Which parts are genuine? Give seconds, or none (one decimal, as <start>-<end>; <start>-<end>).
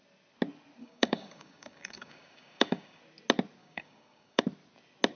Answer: 0.0-0.8; 3.0-3.6; 4.4-5.2